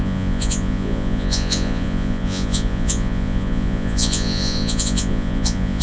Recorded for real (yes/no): no